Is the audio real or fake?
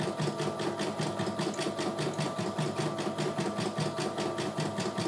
real